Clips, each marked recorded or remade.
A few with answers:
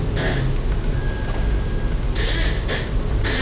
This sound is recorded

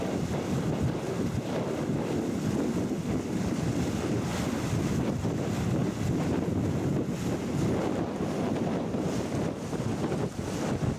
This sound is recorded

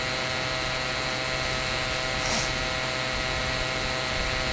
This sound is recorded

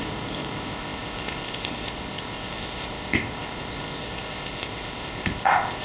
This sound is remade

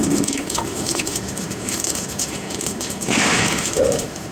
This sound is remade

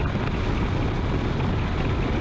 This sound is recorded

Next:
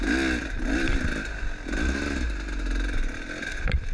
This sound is recorded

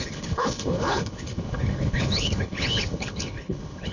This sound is remade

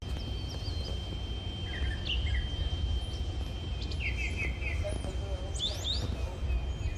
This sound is recorded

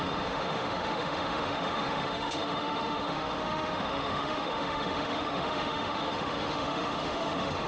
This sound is remade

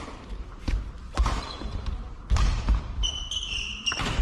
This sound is remade